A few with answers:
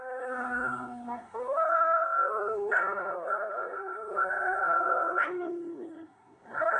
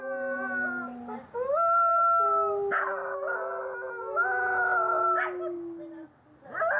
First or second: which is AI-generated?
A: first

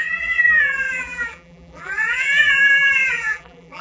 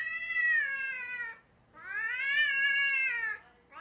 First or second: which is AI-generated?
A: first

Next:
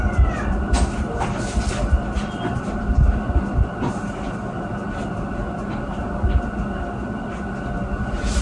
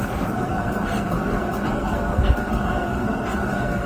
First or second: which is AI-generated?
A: second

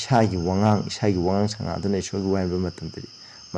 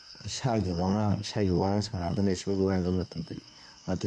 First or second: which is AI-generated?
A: second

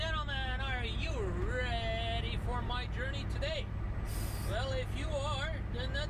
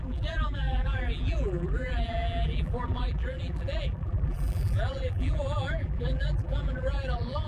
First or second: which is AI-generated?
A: second